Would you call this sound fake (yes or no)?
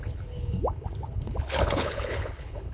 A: yes